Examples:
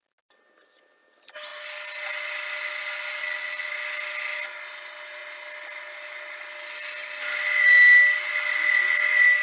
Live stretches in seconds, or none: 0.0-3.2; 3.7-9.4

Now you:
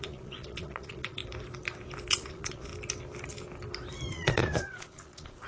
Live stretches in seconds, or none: 1.2-2.1; 2.7-4.1

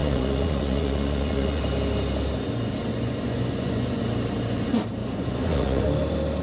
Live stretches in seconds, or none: 1.6-2.9; 4.0-5.0; 5.8-6.4

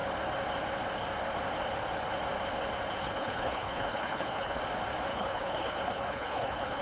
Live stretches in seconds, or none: 0.0-3.0; 4.6-5.1

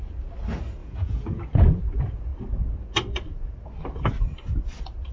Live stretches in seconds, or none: 0.0-0.8; 1.8-5.1